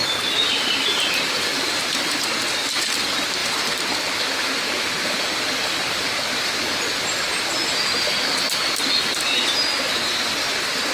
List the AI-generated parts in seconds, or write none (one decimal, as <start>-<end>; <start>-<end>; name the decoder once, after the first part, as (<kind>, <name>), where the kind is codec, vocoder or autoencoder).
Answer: 0.0-1.1 (vocoder, BigVGAN v2)